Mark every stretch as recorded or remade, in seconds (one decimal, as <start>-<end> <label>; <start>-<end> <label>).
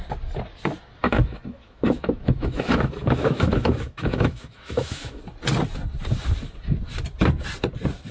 0.0-1.0 recorded; 1.0-5.2 remade; 5.2-8.1 recorded